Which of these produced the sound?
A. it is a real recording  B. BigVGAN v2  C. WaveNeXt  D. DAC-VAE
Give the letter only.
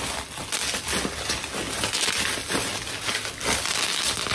A